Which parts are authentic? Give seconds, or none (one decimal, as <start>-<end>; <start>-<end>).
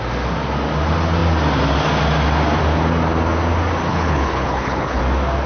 0.0-3.9; 5.0-5.5